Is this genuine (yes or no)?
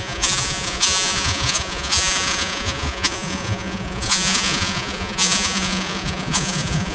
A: no